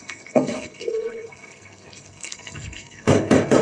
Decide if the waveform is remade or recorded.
remade